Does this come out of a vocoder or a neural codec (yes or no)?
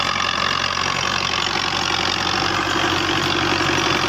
no